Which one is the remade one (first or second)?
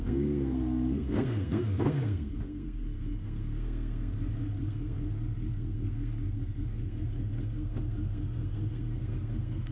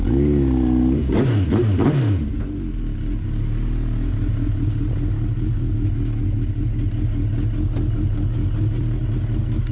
first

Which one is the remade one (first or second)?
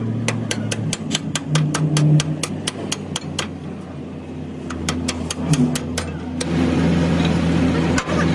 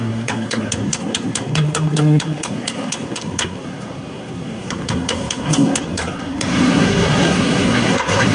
second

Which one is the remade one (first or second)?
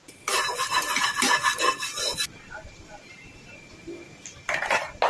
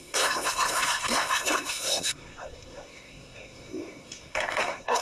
second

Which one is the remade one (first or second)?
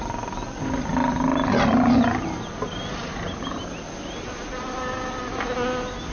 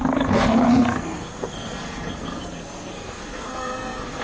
second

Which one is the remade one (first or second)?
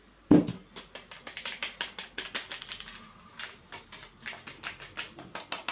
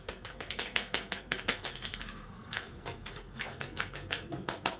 second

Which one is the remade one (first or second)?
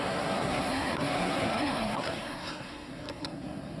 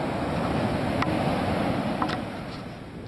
first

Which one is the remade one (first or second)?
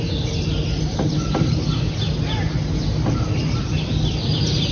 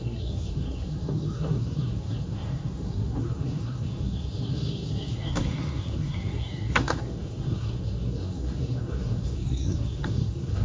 second